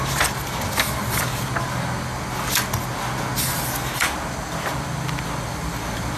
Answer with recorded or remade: recorded